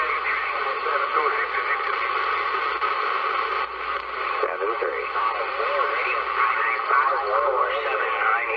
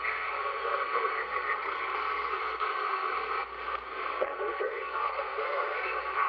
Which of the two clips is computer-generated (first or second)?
second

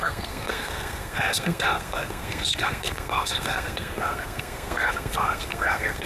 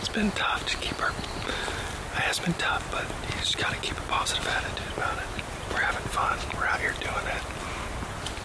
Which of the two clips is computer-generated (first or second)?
first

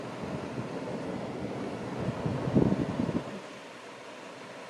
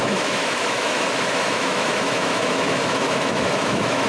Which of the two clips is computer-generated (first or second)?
second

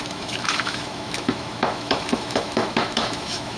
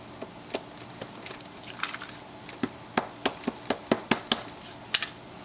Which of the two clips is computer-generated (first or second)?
first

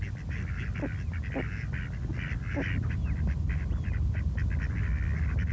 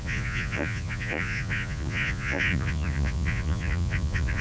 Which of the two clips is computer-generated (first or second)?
second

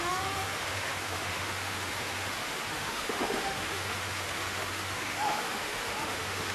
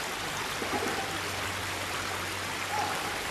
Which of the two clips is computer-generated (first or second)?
first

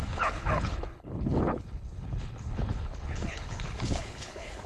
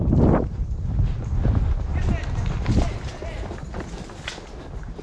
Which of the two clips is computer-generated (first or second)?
first